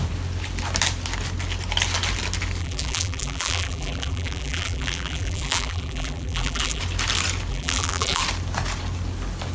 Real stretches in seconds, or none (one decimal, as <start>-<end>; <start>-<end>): 0.0-2.6; 6.8-7.5; 8.2-9.5

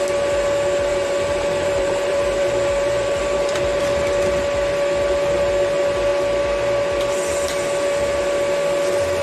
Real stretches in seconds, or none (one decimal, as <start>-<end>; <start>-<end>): 0.0-0.9; 3.8-9.2

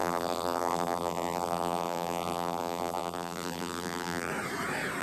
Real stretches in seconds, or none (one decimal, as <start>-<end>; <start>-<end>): 4.3-5.0

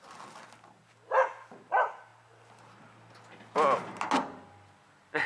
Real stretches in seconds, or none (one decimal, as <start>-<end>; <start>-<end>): 0.0-5.3

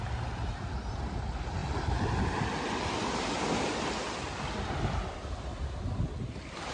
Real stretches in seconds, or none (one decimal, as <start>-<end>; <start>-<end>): 0.0-6.7

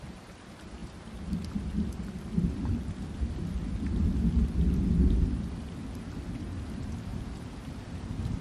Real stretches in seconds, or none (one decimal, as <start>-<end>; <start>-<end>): 0.0-7.1

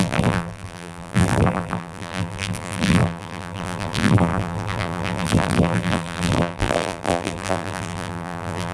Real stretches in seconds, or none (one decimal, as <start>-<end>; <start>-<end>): none

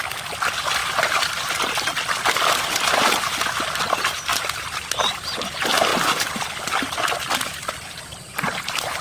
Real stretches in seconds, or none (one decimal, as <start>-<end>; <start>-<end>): 0.0-0.8; 2.7-4.3; 5.1-5.9; 8.6-9.0